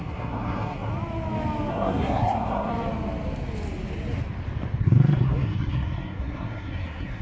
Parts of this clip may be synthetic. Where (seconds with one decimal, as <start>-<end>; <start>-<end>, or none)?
0.0-0.9; 1.7-2.7; 4.8-7.2